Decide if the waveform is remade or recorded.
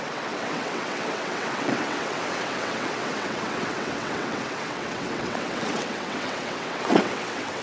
remade